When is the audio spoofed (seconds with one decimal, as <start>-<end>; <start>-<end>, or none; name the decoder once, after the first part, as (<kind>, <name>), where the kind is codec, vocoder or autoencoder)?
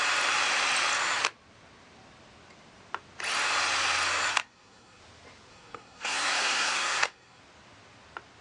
4.3-5.0 (codec, SNAC); 5.5-7.4